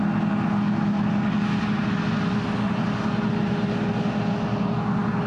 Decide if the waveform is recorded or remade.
recorded